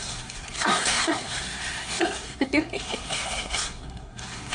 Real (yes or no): no